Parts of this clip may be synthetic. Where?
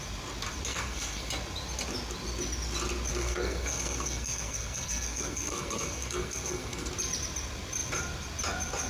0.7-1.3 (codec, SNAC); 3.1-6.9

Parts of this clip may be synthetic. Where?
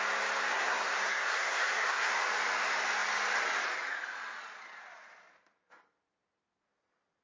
0.5-2.1 (codec, SNAC)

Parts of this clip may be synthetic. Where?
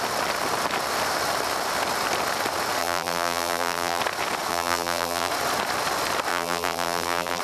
2.8-4.0 (vocoder, BigVGAN v2); 4.5-5.3; 6.3-7.4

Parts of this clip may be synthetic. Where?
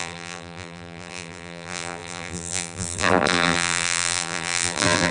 0.0-5.1 (vocoder, BigVGAN v2)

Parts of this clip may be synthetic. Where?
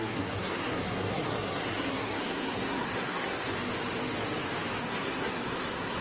0.0-3.5 (codec, SNAC); 4.8-6.0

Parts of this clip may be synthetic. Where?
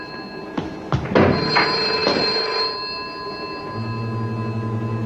none